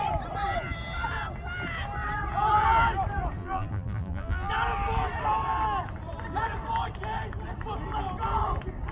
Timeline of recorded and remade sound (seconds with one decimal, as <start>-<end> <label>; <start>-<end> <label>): 0.0-3.4 recorded; 3.4-4.5 remade; 4.5-8.9 recorded